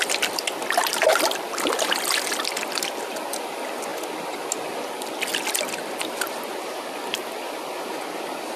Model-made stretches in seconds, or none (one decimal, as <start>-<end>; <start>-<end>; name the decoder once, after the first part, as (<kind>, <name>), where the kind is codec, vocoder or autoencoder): 0.0-3.9 (vocoder, BigVGAN v2); 4.6-8.6